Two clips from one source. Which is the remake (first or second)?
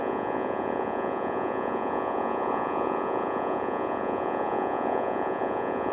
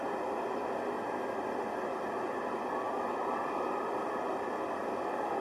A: first